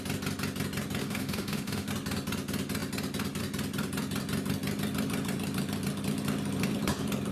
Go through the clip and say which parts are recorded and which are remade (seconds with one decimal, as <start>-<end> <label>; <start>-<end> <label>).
0.0-1.0 recorded; 1.0-1.9 remade; 1.9-7.3 recorded